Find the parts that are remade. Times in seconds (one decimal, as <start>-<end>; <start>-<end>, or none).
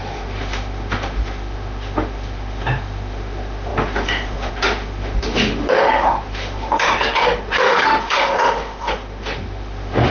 0.0-10.1